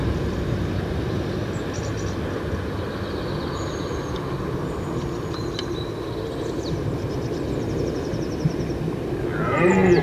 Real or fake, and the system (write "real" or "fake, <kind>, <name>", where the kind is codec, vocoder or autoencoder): real